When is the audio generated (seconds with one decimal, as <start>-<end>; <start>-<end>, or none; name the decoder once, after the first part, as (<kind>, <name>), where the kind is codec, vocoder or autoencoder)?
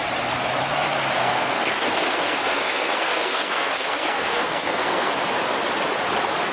1.2-5.1 (codec, SNAC)